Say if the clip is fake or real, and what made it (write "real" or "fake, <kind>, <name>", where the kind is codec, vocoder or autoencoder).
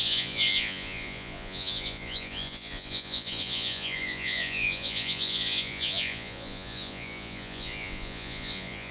fake, vocoder, Vocos